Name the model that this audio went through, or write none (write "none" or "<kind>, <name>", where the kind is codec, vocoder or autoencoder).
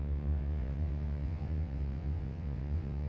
vocoder, WaveNeXt